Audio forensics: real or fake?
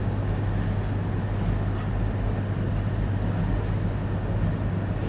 real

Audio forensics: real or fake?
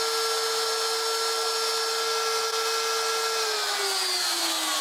real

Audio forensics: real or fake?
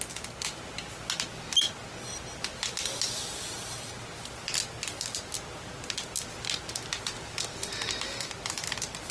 real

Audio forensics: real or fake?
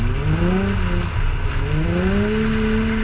real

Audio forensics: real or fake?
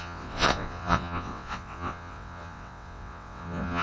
fake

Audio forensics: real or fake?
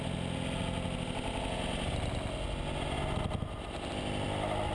real